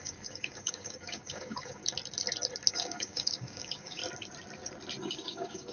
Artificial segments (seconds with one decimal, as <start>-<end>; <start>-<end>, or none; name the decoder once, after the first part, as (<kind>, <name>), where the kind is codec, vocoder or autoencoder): 0.0-1.8 (codec, DAC); 2.7-4.0; 5.0-5.7

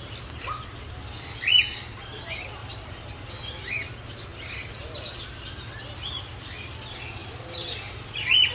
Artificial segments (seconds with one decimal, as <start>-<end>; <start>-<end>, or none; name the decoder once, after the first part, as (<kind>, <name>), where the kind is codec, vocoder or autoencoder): 2.6-3.3 (vocoder, BigVGAN v2); 7.2-8.5

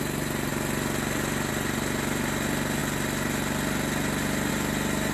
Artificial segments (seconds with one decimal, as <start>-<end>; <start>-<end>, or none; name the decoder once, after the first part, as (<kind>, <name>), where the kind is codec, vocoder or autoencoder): none

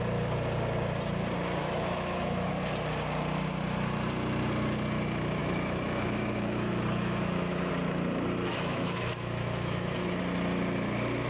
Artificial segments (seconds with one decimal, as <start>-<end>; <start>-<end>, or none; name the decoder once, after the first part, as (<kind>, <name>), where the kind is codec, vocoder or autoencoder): 1.6-2.5 (autoencoder, DAC-VAE); 5.4-7.7; 8.5-10.2

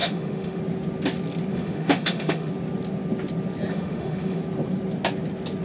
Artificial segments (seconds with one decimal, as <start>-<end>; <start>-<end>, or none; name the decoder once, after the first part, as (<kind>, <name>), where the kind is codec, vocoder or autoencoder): 0.0-0.6 (autoencoder, DAC-VAE); 1.5-2.5; 3.7-4.4

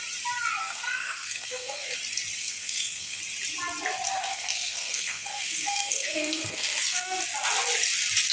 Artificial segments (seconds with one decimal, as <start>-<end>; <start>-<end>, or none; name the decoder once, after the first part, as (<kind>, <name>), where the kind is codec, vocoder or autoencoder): 0.6-1.9 (codec, SNAC); 2.4-3.2; 4.3-7.2